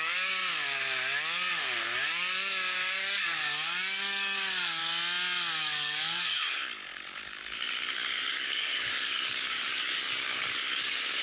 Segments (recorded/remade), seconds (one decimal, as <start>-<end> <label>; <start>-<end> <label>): 0.0-0.4 remade; 0.4-1.5 recorded; 1.5-4.8 remade; 4.8-5.6 recorded; 5.6-11.2 remade